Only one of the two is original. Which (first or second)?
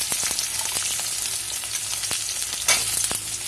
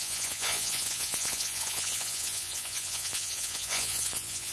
first